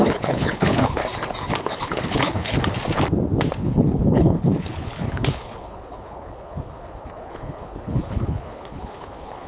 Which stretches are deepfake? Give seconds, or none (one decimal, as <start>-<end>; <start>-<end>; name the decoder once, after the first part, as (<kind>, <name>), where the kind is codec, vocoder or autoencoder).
0.0-1.0 (codec, HILCodec); 1.6-2.5; 3.6-9.5